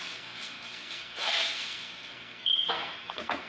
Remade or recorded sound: remade